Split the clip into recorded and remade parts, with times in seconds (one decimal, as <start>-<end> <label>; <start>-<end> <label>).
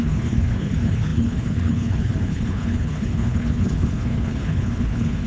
0.0-5.3 remade